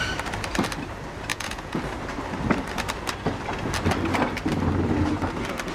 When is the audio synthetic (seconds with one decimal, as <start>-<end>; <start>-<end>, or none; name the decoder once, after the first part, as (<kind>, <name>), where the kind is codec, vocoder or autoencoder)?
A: 1.3-1.8 (vocoder, Vocos)